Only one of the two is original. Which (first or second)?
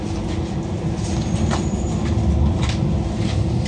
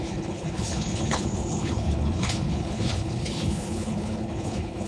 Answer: first